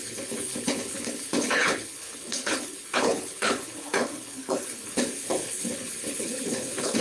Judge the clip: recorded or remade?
remade